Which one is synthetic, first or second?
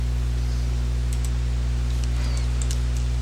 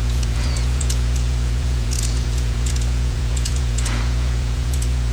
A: second